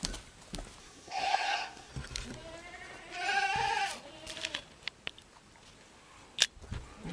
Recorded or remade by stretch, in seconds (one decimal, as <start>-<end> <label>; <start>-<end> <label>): 0.0-0.8 recorded; 0.8-1.9 remade; 1.9-7.1 recorded